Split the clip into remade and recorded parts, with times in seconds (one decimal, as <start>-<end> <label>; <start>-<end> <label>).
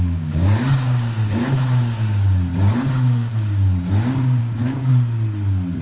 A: 0.0-4.9 remade; 4.9-5.8 recorded